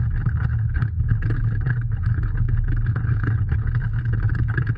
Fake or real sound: fake